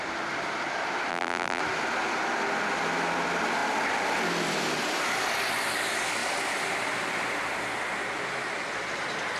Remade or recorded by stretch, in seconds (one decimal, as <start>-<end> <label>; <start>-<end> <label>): 0.0-1.1 recorded; 1.1-1.6 remade; 1.6-9.4 recorded